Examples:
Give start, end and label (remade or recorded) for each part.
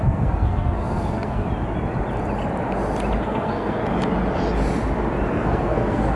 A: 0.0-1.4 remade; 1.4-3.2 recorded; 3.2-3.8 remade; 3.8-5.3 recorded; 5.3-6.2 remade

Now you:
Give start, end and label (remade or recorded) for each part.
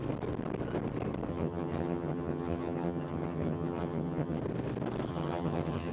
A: 0.0-1.3 recorded; 1.3-4.4 remade; 4.4-5.1 recorded; 5.1-5.9 remade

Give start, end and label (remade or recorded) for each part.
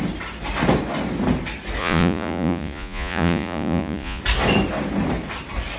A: 0.0-1.8 recorded; 1.8-4.2 remade; 4.2-5.8 recorded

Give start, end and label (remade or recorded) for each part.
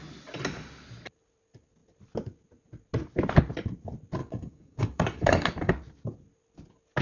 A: 0.0-4.2 recorded; 4.2-5.7 remade; 5.7-7.0 recorded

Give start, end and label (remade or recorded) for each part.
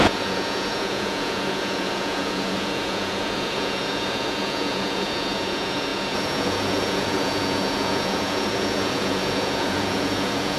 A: 0.0-10.6 remade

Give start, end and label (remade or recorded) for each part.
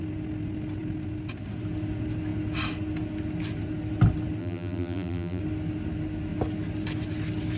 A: 0.0-4.4 recorded; 4.4-5.4 remade; 5.4-7.6 recorded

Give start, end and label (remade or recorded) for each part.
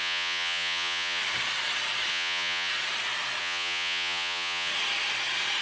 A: 0.0-1.2 remade; 1.2-2.1 recorded; 2.1-2.7 remade; 2.7-3.4 recorded; 3.4-4.7 remade; 4.7-5.6 recorded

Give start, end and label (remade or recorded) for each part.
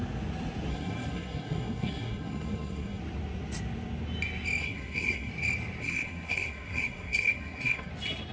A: 0.0-0.7 recorded; 0.7-3.0 remade; 3.0-4.6 recorded; 4.6-5.3 remade; 5.3-5.8 recorded; 5.8-7.9 remade; 7.9-8.3 recorded